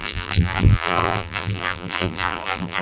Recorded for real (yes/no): no